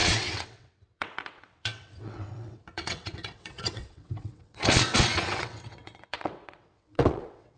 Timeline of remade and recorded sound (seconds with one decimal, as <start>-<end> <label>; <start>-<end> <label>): 0.0-7.6 remade